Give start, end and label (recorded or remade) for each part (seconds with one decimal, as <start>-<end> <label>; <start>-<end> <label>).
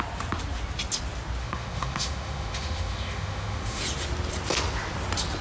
0.0-1.4 recorded; 1.4-3.8 remade; 3.8-5.4 recorded